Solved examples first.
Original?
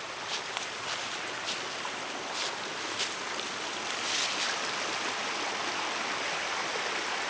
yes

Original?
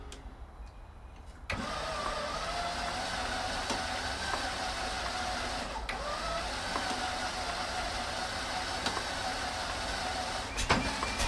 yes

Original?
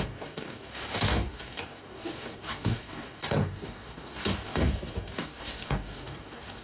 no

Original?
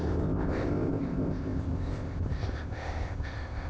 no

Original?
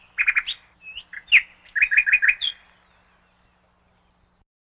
yes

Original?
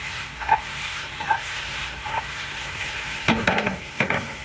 no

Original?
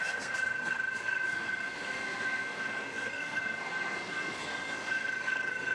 no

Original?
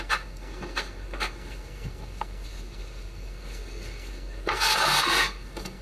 no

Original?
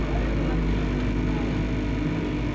yes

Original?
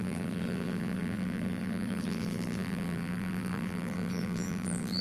no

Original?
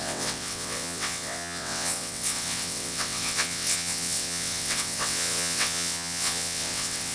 no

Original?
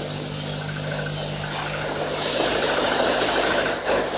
yes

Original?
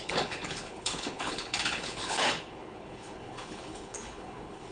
no